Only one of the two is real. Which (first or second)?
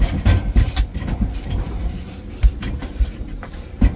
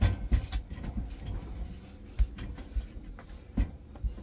second